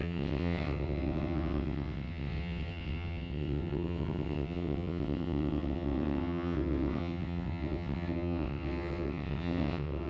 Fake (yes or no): yes